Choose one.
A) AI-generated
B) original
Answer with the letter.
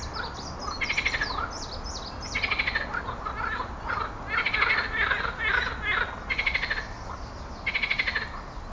B